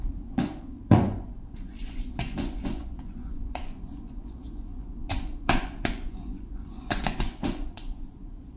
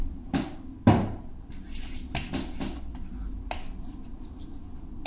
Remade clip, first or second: first